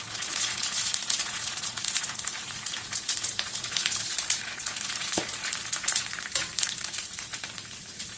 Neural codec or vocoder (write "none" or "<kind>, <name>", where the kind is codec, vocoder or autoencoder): vocoder, Vocos